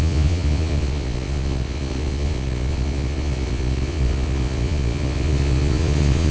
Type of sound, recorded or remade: remade